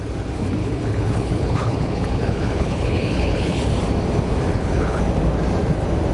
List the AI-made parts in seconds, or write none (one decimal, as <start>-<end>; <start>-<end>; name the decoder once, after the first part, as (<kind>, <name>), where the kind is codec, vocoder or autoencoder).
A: 0.6-3.7 (codec, HILCodec); 4.5-5.0